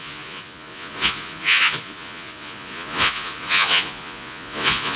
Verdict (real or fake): fake